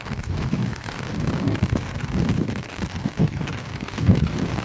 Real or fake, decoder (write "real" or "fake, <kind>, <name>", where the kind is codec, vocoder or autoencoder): fake, codec, DAC